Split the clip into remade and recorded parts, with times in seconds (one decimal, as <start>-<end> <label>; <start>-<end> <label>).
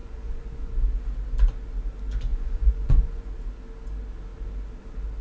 0.0-0.7 remade; 0.7-2.3 recorded; 2.3-3.3 remade; 3.3-5.2 recorded